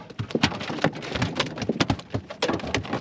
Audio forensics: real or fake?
real